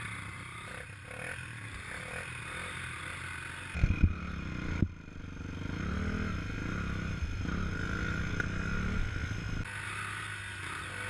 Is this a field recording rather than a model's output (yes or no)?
yes